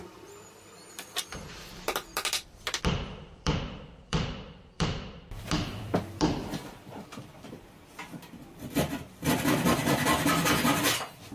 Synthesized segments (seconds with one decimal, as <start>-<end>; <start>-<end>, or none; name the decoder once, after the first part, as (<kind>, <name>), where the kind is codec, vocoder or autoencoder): 0.0-11.3 (vocoder, BigVGAN v2)